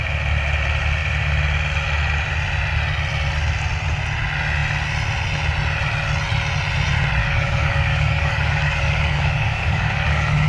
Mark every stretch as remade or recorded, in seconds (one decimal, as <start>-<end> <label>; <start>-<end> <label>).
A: 0.0-7.2 recorded; 7.2-10.5 remade